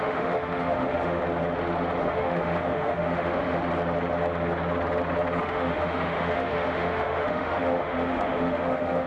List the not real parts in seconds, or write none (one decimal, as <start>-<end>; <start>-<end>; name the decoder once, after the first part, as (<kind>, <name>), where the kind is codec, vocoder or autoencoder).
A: 0.0-1.2 (autoencoder, DAC-VAE); 2.0-3.6; 5.4-9.1